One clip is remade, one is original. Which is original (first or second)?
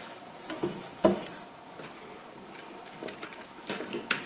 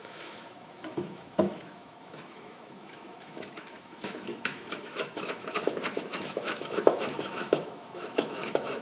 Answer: first